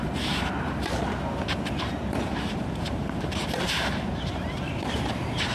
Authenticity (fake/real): fake